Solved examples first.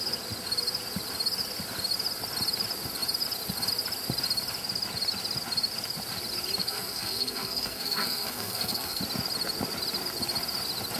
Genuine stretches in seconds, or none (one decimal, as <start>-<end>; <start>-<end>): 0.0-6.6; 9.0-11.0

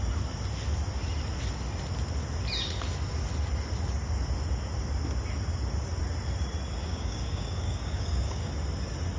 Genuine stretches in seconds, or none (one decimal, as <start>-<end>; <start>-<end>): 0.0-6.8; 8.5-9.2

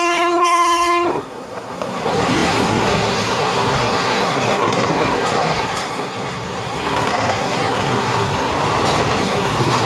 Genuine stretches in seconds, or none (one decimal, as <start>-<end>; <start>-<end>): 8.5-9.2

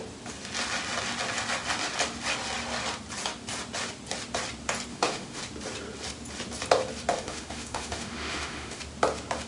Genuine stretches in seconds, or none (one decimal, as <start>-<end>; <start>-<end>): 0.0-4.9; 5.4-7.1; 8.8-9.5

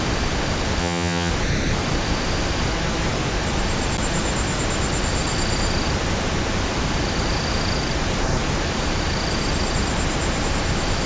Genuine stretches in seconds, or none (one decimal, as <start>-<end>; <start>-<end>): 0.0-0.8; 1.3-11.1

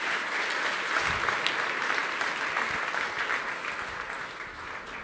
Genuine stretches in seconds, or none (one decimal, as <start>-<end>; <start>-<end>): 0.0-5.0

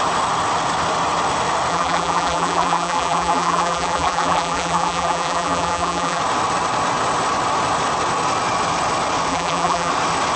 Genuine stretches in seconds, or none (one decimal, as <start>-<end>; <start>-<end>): 0.0-1.7; 6.2-9.3; 9.9-10.4